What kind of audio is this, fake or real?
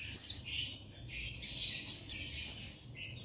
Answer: real